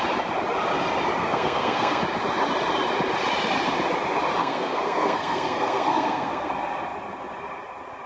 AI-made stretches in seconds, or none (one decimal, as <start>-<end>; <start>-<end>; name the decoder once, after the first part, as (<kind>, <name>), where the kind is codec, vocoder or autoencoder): 1.2-2.0 (codec, SNAC); 4.4-6.5